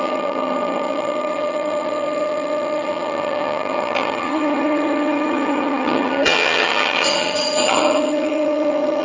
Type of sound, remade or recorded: remade